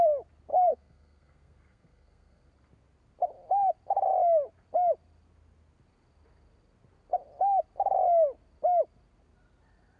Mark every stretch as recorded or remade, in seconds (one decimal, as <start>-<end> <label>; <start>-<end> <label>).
0.0-0.5 recorded; 0.5-2.5 remade; 2.5-10.0 recorded